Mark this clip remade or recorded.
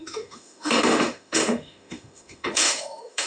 remade